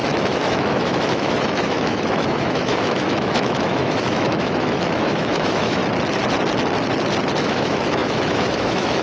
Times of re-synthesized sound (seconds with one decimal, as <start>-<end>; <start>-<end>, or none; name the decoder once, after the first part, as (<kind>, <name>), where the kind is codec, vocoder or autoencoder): 0.0-5.8 (autoencoder, DAC-VAE); 7.4-9.0